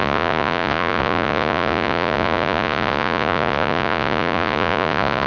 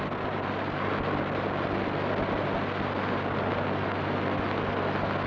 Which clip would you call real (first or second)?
second